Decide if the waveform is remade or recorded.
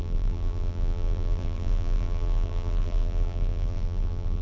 remade